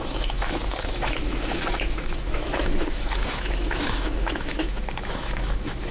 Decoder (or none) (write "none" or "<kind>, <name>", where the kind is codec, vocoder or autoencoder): autoencoder, DAC-VAE